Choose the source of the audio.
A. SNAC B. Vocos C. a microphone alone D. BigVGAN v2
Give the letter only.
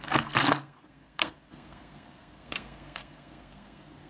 A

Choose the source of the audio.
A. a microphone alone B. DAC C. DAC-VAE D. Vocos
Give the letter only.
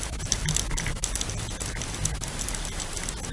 A